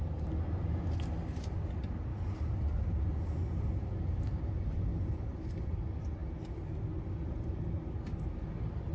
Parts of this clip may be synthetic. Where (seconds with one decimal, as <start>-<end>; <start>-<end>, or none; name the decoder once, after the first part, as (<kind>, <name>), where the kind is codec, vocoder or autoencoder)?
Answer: none

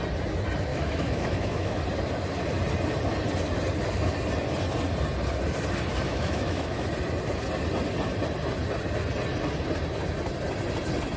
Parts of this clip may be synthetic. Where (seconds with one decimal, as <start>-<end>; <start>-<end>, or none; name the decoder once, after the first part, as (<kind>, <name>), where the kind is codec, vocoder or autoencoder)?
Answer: 0.7-1.8 (autoencoder, DAC-VAE); 6.1-6.9

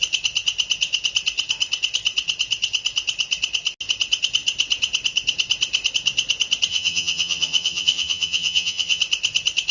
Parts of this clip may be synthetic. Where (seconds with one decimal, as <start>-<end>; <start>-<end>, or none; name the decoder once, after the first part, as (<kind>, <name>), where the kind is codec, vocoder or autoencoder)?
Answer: 6.7-9.0 (vocoder, HiFi-GAN)

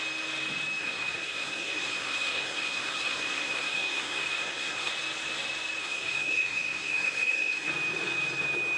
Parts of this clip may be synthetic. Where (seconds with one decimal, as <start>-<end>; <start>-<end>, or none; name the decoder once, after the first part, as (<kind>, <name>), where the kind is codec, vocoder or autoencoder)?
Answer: 0.8-4.9 (codec, SNAC); 5.8-7.7

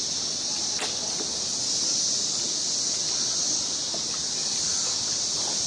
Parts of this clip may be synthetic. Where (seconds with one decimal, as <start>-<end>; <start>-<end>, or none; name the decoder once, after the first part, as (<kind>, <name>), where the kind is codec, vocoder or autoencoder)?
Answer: none

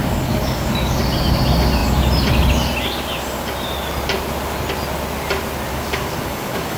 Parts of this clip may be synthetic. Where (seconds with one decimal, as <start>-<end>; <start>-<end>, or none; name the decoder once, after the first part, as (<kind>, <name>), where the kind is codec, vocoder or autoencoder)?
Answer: 0.0-1.0 (codec, DAC); 5.7-6.8

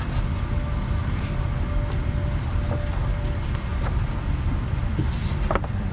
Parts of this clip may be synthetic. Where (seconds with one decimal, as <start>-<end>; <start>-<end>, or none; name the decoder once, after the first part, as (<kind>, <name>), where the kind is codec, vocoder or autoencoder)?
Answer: none